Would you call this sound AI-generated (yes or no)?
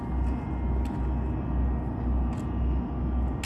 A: no